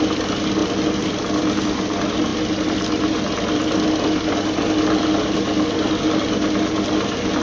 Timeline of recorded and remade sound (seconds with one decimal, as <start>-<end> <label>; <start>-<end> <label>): 0.0-7.4 recorded